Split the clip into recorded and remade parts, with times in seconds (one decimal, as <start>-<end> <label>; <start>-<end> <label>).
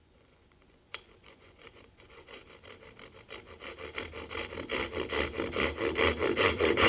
0.0-2.4 remade; 2.4-6.5 recorded; 6.5-6.9 remade